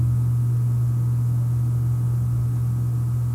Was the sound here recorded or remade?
recorded